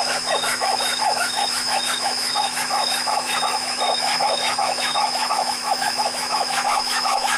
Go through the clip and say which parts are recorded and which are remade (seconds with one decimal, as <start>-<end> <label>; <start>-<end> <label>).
0.0-7.4 remade